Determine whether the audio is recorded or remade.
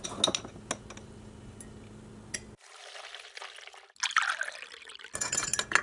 recorded